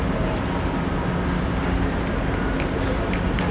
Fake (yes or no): no